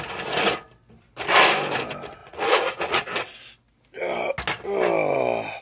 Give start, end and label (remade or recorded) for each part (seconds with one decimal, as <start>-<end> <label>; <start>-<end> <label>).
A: 0.0-2.2 recorded; 2.2-3.0 remade; 3.0-5.6 recorded